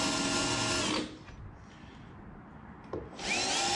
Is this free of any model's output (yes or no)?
yes